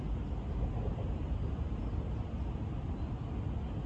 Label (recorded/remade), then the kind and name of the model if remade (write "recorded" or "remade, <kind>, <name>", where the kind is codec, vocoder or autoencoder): recorded